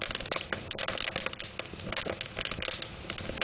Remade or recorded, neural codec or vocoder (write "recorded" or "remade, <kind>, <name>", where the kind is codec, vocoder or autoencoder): recorded